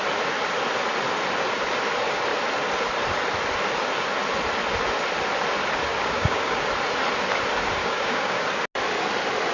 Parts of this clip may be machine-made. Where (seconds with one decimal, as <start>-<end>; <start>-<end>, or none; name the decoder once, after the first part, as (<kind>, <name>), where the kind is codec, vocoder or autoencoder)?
5.9-6.6 (codec, DAC); 7.8-8.5